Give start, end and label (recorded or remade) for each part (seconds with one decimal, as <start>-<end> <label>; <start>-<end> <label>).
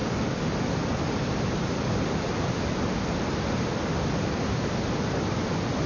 0.0-1.7 recorded; 1.7-5.9 remade